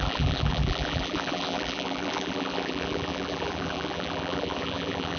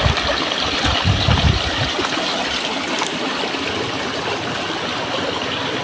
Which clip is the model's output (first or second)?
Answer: first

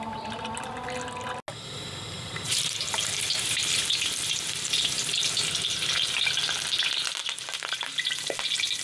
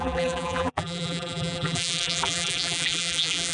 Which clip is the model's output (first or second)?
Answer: second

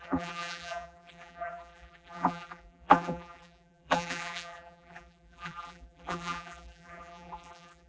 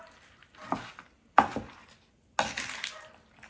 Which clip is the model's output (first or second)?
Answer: first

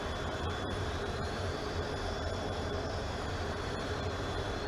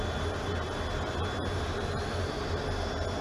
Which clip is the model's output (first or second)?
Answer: first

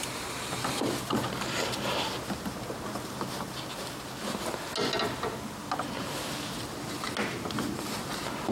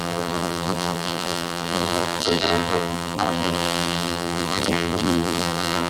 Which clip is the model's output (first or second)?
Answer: second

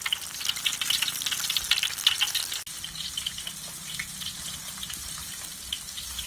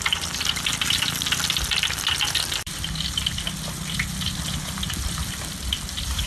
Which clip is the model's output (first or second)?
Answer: second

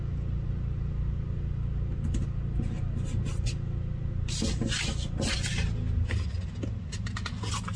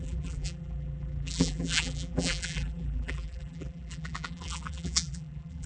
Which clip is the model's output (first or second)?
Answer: second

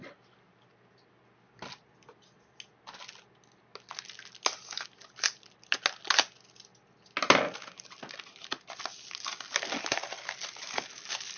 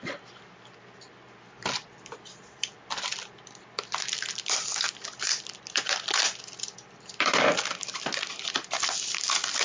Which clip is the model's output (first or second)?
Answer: second